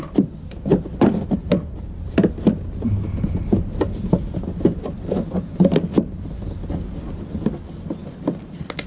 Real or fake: fake